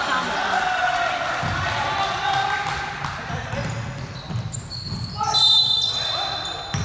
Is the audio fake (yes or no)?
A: no